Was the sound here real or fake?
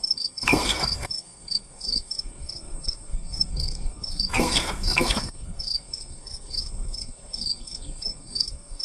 fake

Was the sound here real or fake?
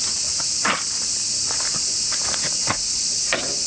real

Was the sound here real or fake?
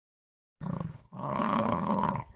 fake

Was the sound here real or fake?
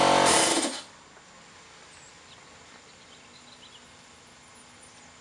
real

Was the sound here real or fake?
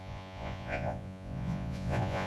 fake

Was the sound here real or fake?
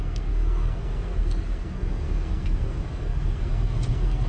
fake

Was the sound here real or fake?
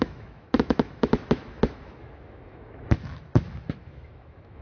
fake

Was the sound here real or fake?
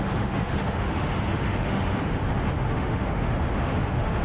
fake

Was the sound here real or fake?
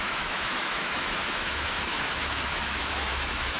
fake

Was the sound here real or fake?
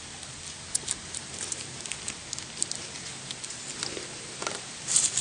real